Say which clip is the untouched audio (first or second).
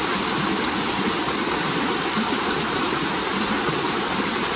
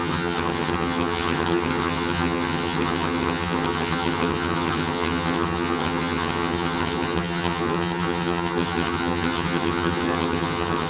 first